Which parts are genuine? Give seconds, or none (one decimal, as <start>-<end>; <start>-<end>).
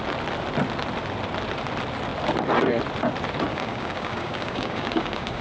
0.0-3.5